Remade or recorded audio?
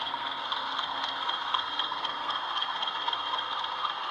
remade